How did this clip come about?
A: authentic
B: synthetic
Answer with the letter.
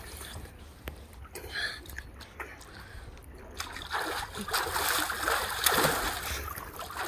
A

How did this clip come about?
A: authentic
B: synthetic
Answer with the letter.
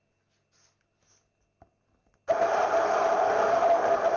A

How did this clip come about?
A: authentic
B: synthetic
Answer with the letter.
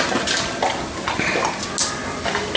A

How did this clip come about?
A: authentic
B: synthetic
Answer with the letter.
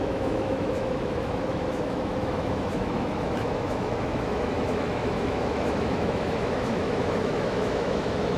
B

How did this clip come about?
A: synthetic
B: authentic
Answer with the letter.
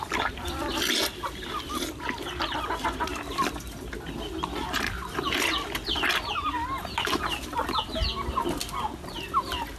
B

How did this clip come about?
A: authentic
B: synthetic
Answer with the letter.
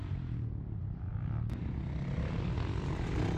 A